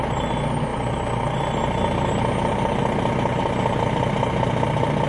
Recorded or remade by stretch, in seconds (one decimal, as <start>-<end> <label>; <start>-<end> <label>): 0.0-5.1 recorded